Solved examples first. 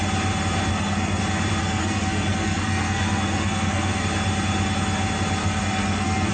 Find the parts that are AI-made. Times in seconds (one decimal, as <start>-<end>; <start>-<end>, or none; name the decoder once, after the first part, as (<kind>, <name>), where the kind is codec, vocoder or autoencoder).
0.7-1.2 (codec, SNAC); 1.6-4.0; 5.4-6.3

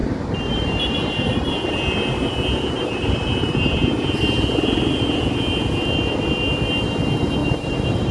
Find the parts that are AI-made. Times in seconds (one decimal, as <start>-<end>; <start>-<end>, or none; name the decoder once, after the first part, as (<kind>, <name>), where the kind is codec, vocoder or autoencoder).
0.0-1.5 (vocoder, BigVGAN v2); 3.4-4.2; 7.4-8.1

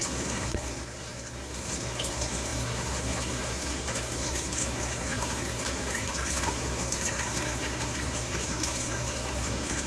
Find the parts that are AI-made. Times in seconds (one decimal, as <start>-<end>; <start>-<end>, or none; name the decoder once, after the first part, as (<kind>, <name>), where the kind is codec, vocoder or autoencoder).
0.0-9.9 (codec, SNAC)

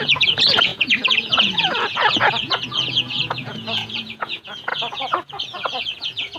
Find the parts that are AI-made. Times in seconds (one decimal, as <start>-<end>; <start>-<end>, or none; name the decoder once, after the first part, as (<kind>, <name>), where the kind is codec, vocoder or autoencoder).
0.0-6.4 (vocoder, Vocos)

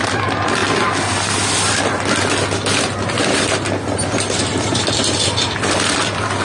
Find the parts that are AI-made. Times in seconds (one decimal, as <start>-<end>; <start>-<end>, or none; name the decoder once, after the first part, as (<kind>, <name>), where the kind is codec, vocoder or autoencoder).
0.0-0.6 (vocoder, BigVGAN v2); 4.4-6.4

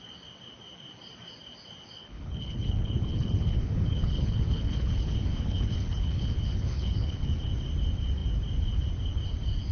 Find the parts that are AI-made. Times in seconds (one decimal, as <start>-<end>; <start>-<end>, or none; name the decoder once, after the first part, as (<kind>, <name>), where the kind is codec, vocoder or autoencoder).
2.0-7.3 (codec, HILCodec)

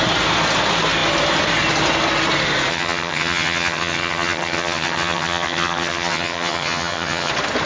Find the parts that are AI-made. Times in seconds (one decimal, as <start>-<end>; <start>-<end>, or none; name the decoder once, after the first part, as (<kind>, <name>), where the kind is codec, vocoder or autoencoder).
2.7-7.3 (vocoder, HiFi-GAN)